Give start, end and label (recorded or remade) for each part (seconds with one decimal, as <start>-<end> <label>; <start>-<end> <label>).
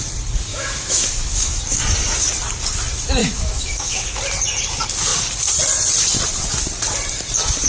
0.0-0.5 recorded; 0.5-1.6 remade; 1.6-3.2 recorded; 3.2-4.2 remade; 4.2-7.7 recorded